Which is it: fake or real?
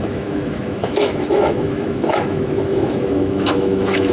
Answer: fake